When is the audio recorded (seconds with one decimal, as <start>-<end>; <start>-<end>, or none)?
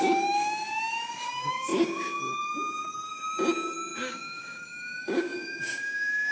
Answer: none